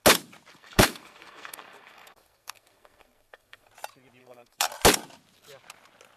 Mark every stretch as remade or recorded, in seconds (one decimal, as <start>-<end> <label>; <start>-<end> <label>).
0.0-0.5 recorded; 0.5-3.7 remade; 3.7-4.2 recorded; 4.2-4.7 remade; 4.7-6.2 recorded